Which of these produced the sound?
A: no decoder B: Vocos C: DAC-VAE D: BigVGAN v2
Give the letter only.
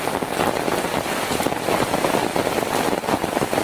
A